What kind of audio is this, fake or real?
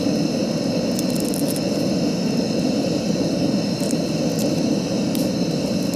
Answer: real